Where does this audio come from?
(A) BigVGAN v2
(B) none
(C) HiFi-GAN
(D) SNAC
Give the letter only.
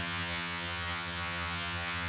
C